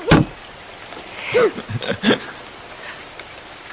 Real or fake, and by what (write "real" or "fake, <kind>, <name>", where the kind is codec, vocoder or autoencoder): real